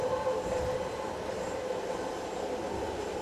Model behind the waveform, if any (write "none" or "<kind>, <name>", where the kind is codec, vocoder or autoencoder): none